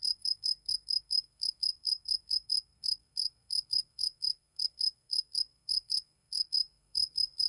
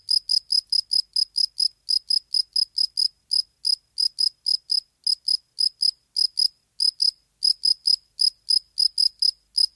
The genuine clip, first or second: second